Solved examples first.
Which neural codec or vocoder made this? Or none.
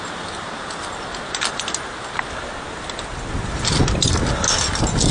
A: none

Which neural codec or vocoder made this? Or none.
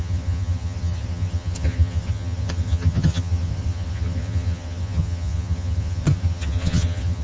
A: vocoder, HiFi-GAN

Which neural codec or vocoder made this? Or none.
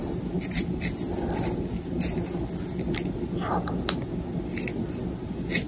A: none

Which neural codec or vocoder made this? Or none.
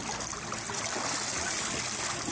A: none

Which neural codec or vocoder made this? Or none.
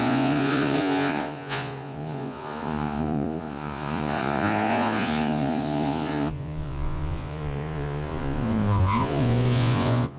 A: vocoder, Vocos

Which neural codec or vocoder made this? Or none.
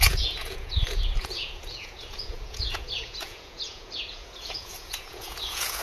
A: vocoder, Vocos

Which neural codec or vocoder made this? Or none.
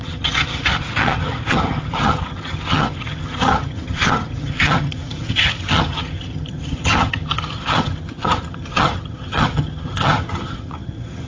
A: vocoder, HiFi-GAN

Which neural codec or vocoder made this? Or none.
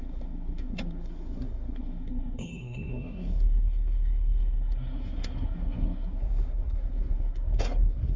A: codec, SNAC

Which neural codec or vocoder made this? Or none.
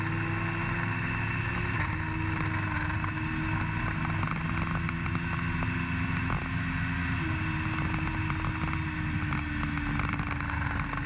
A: none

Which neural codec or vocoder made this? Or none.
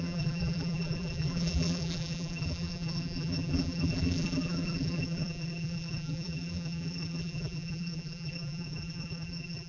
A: vocoder, BigVGAN v2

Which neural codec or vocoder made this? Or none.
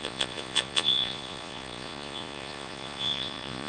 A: vocoder, Vocos